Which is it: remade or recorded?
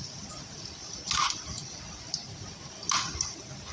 recorded